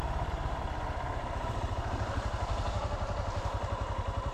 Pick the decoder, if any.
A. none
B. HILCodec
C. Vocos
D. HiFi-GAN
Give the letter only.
A